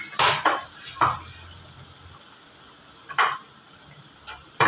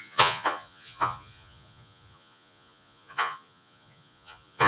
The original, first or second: first